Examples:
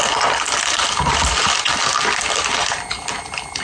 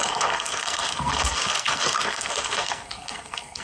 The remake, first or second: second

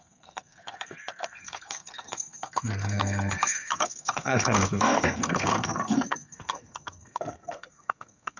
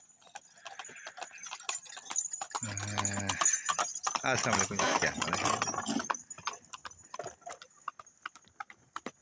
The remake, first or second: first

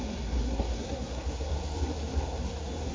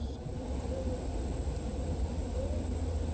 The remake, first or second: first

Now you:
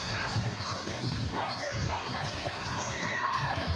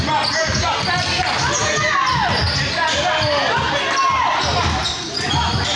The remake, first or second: first